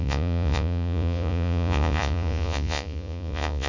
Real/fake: fake